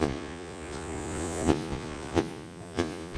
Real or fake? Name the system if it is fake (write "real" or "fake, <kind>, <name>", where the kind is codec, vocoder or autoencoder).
fake, vocoder, Vocos